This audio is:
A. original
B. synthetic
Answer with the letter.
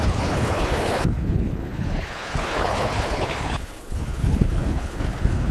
B